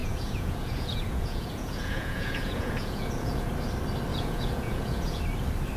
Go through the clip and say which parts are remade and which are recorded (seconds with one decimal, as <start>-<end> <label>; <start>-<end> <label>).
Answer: 0.0-3.5 remade; 3.5-4.1 recorded; 4.1-5.2 remade; 5.2-5.8 recorded